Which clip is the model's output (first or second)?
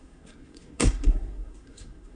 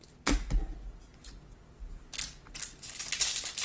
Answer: first